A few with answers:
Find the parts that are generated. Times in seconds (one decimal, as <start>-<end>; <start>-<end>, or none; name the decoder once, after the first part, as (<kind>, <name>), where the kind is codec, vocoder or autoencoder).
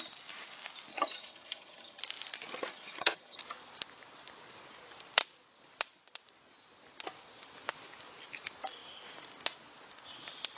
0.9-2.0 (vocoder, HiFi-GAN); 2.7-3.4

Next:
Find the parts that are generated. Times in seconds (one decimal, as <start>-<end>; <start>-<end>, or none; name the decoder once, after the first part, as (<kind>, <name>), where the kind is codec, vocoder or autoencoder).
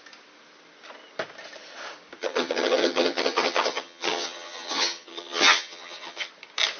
2.2-6.3 (vocoder, HiFi-GAN)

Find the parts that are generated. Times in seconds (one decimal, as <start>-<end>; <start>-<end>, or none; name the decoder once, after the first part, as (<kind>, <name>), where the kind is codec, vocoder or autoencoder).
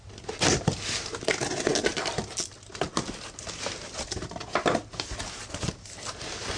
none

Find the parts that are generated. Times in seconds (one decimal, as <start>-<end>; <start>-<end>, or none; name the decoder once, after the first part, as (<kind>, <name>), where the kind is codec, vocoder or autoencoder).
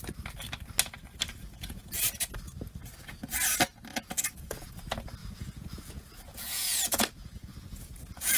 1.3-2.3 (vocoder, Vocos); 3.9-4.7; 5.2-8.4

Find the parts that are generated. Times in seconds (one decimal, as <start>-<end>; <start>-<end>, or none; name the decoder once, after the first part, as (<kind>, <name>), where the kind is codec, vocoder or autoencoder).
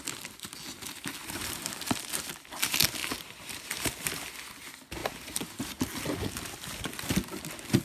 1.2-1.9 (vocoder, BigVGAN v2); 3.0-3.9; 5.0-5.8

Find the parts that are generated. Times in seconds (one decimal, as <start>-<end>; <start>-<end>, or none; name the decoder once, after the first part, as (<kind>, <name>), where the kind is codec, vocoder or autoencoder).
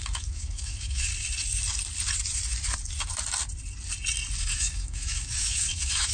0.0-1.1 (autoencoder, DAC-VAE); 4.4-6.1